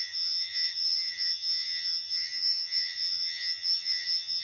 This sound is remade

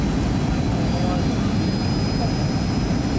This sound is recorded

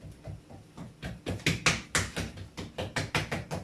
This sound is recorded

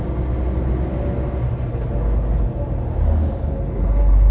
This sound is recorded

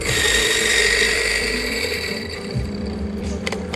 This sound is remade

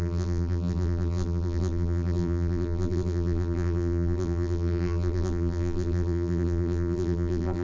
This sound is remade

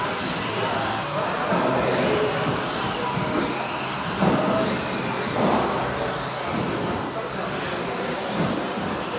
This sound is recorded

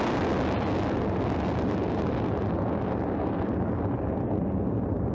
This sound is recorded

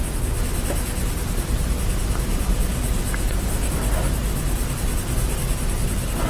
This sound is recorded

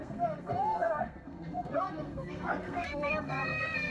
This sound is remade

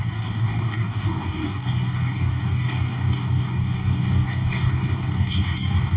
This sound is remade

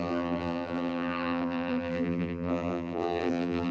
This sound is remade